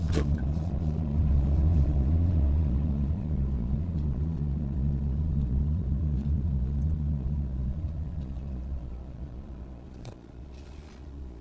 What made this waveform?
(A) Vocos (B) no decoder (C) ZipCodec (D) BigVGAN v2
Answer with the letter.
A